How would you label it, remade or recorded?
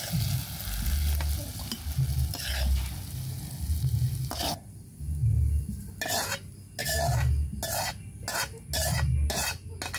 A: recorded